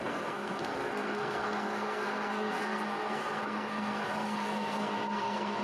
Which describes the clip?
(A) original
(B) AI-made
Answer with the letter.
B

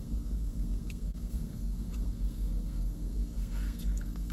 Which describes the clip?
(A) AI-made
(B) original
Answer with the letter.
A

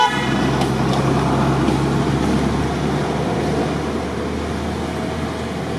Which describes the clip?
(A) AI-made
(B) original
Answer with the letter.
B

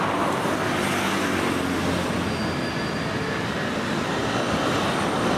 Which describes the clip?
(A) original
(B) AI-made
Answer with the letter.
A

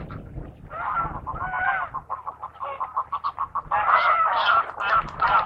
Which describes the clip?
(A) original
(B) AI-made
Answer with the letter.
A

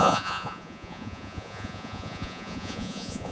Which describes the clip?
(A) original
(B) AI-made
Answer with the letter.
B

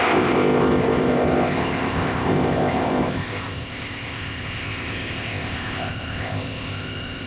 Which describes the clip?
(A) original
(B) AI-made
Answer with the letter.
B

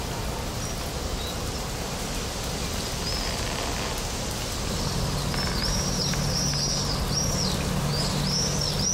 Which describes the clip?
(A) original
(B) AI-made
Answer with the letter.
A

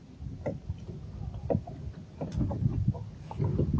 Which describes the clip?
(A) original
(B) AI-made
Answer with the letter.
A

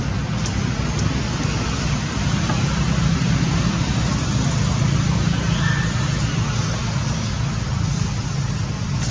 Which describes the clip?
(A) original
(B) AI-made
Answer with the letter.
A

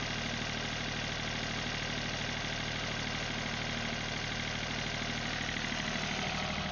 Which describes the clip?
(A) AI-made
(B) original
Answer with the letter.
B